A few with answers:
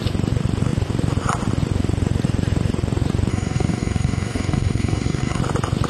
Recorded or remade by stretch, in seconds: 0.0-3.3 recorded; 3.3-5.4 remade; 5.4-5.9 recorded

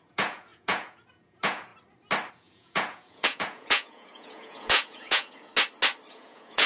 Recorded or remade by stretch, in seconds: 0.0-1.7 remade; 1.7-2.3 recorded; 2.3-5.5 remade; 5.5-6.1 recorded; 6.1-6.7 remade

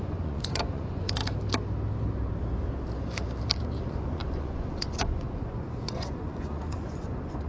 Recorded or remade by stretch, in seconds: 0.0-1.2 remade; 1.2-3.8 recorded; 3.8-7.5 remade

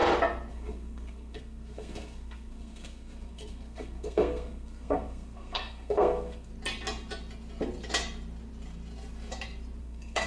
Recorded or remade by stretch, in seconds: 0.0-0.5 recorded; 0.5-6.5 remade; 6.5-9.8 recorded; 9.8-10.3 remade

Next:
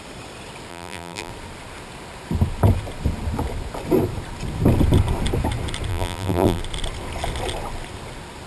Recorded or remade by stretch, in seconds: 0.0-0.7 recorded; 0.7-1.3 remade; 1.3-5.9 recorded; 5.9-6.6 remade; 6.6-8.5 recorded

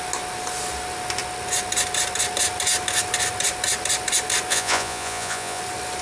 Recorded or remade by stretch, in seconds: 0.0-4.5 recorded; 4.5-5.6 remade; 5.6-6.0 recorded